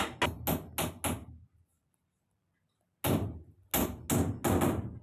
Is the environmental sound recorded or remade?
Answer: recorded